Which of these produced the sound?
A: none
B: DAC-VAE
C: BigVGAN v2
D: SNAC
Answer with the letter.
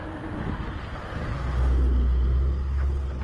A